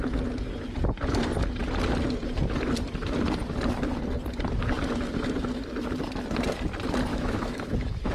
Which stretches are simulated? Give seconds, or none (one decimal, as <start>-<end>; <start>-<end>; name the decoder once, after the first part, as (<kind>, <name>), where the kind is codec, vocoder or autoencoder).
7.1-8.1 (autoencoder, DAC-VAE)